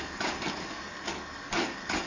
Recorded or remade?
remade